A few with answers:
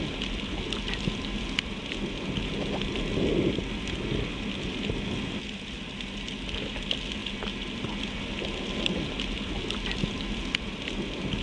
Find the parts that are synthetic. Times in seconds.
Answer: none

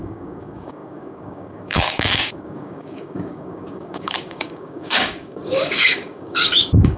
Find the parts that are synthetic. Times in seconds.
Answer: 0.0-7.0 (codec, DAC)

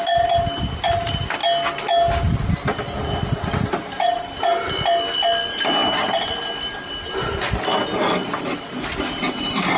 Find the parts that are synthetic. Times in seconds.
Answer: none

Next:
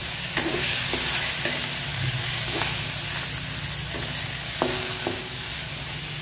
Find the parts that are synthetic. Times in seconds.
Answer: 0.0-0.8 (codec, DAC); 1.9-2.6; 4.3-5.8